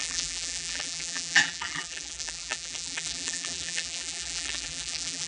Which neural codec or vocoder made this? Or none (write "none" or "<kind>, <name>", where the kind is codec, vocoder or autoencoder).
vocoder, BigVGAN v2